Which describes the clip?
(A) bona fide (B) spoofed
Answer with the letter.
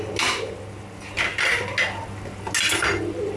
A